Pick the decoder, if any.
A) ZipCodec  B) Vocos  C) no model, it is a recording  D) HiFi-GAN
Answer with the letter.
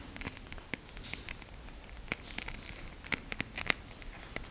C